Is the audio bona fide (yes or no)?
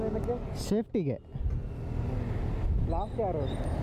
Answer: yes